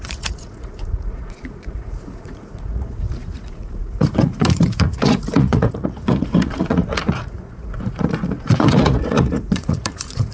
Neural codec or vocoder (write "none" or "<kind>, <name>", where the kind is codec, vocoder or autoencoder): vocoder, Vocos